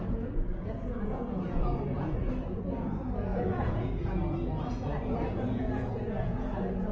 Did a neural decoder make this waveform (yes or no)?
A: yes